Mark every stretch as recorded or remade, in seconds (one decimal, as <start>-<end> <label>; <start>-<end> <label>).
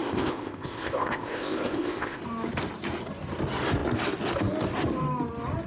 0.0-2.2 remade; 2.2-5.7 recorded